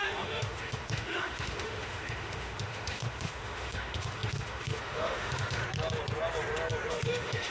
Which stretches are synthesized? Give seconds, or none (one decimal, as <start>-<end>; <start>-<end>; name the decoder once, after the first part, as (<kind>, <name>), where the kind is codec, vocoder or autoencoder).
0.0-5.6 (autoencoder, DAC-VAE); 6.9-7.5